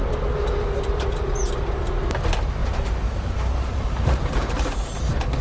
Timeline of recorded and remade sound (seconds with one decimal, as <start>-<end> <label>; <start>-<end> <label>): 0.0-2.6 recorded; 2.6-4.7 remade; 4.7-5.4 recorded